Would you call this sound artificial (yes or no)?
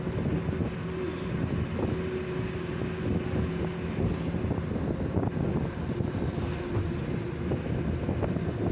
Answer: no